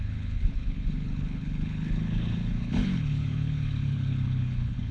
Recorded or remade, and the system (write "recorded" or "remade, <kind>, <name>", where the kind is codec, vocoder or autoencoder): remade, codec, HILCodec